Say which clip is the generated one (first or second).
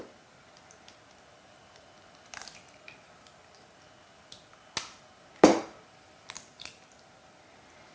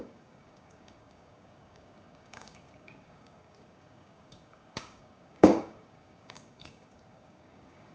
second